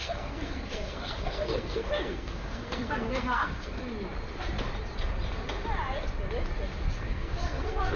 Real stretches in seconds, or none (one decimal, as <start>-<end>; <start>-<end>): 3.8-7.0